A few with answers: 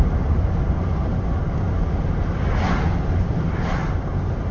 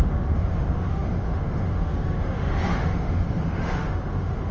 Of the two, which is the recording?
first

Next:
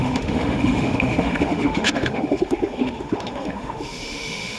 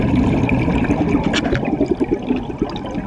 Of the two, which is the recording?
second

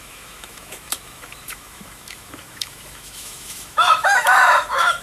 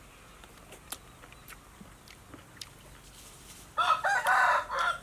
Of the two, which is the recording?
second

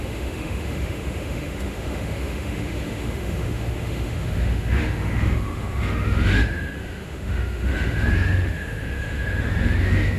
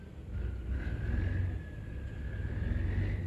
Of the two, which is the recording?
second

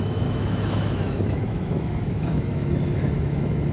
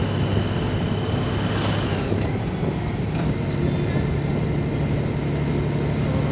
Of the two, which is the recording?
second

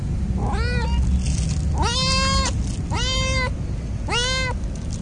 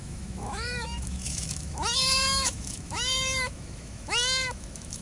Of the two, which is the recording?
first